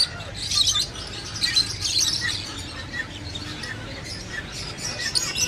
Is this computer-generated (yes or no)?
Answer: no